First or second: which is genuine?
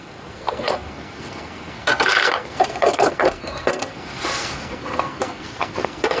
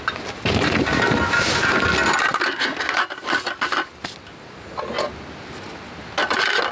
second